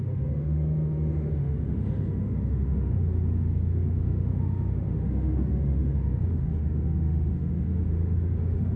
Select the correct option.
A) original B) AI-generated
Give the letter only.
B